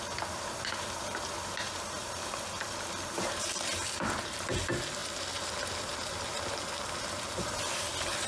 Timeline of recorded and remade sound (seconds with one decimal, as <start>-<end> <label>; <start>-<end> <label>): 0.0-8.3 recorded